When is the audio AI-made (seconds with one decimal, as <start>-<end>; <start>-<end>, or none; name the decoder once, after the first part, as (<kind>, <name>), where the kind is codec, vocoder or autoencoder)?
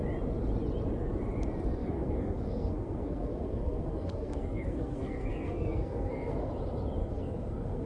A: 1.8-6.5 (codec, SNAC); 7.0-7.9